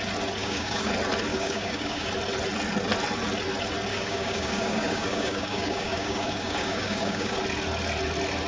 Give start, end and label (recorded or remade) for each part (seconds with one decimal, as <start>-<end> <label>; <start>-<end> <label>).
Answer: 0.0-0.4 recorded; 0.4-0.9 remade; 0.9-1.3 recorded; 1.3-2.1 remade; 2.1-3.9 recorded; 3.9-7.4 remade; 7.4-8.5 recorded